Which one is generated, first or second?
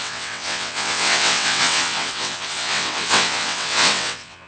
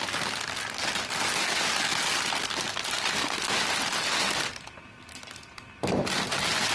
first